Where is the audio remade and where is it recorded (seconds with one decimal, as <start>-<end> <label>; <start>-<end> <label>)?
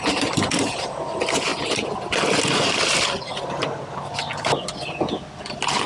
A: 0.0-5.9 recorded